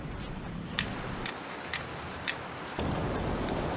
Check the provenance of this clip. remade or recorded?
remade